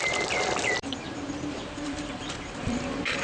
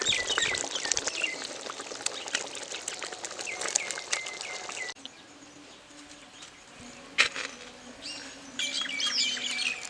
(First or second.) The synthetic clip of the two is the first